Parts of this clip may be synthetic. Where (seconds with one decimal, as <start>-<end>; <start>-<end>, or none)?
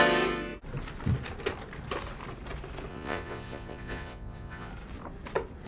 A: 2.9-4.7